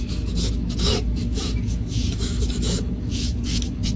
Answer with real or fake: fake